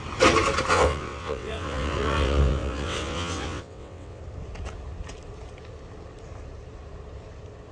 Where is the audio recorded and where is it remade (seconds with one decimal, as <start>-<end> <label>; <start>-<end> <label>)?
0.0-0.7 recorded; 0.7-4.2 remade; 4.2-7.7 recorded